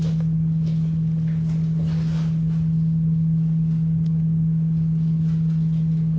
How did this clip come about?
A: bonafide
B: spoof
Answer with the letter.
A